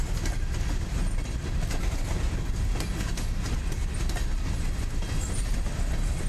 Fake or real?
real